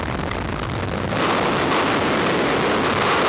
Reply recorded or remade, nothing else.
recorded